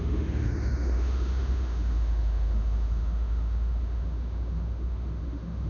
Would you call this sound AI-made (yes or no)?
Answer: yes